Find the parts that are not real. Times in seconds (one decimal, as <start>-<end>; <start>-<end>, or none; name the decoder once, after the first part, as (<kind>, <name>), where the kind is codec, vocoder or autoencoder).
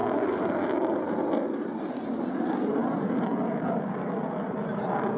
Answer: 0.0-2.8 (vocoder, BigVGAN v2); 4.8-5.2